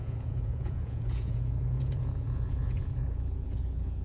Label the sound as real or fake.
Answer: fake